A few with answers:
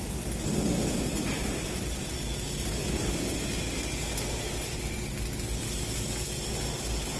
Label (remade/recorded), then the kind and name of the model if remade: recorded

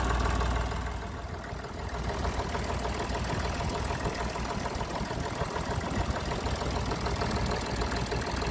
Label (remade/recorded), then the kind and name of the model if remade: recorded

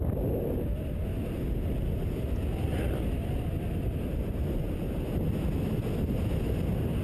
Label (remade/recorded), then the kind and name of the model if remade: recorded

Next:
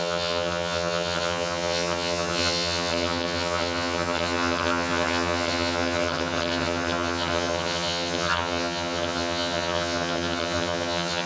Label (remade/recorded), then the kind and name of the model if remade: remade, vocoder, HiFi-GAN